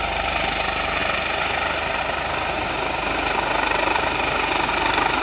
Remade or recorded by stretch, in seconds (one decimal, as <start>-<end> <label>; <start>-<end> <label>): 0.0-5.2 recorded